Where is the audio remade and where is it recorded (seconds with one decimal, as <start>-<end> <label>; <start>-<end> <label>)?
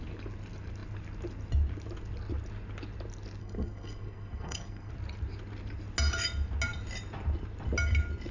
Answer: 0.0-3.4 recorded; 3.4-4.9 remade; 4.9-8.3 recorded